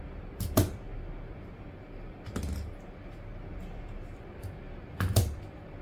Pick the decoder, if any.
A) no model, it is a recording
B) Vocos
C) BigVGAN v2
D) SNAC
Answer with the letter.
A